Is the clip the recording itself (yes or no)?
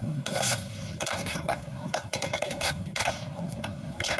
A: no